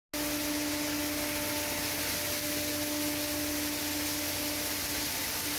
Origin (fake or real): real